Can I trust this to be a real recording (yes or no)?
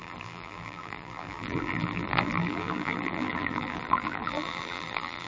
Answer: no